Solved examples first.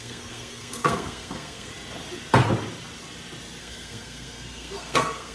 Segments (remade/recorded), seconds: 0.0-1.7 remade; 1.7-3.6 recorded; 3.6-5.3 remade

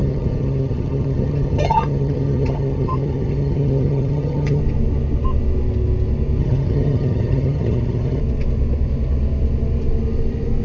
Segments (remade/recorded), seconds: 0.0-4.6 remade; 4.6-6.4 recorded; 6.4-8.2 remade; 8.2-10.6 recorded

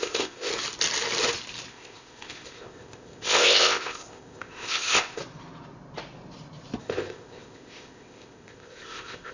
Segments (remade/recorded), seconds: 0.0-0.5 remade; 0.5-1.7 recorded; 1.7-5.2 remade; 5.2-6.8 recorded; 6.8-9.3 remade

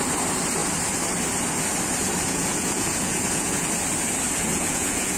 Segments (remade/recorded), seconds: 0.0-2.3 recorded; 2.3-3.7 remade; 3.7-4.5 recorded; 4.5-5.2 remade

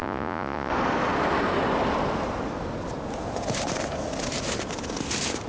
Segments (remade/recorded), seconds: 0.0-0.7 remade; 0.7-5.5 recorded

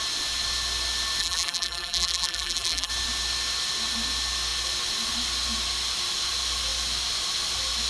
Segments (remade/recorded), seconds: 0.0-1.2 recorded; 1.2-2.9 remade; 2.9-7.9 recorded